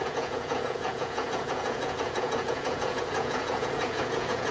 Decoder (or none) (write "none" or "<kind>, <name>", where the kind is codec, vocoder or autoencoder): vocoder, Vocos